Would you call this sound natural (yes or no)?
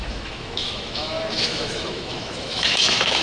no